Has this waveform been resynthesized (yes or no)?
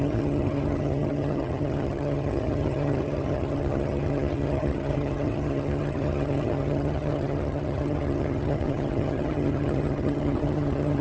yes